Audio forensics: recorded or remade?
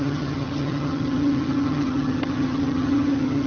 remade